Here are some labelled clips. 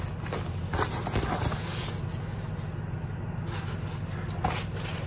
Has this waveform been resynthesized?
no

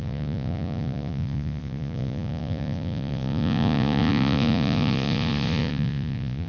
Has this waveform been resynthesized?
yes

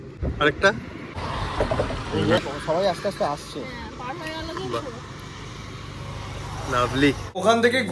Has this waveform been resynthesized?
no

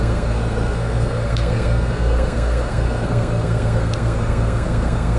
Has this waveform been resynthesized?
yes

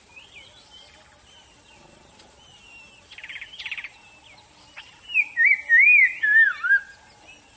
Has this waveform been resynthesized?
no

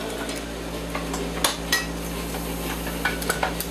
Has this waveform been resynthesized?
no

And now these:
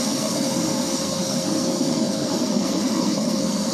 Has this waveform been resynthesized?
yes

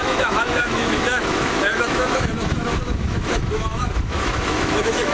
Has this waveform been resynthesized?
yes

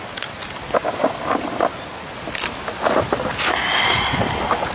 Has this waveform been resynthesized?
no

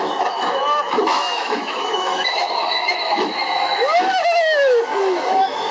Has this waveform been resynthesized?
yes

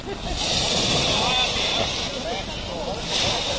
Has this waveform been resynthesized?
no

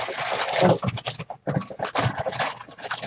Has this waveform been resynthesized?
no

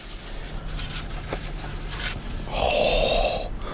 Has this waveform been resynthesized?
no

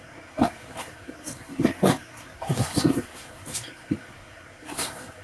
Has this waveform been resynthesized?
yes